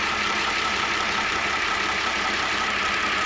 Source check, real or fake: fake